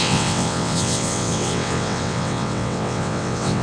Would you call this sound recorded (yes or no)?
no